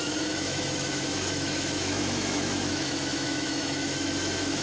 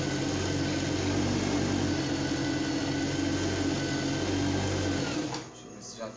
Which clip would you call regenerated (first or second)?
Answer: first